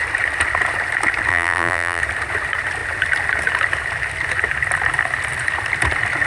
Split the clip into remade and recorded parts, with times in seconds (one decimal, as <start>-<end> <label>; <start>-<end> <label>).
0.0-1.3 recorded; 1.3-2.0 remade; 2.0-6.3 recorded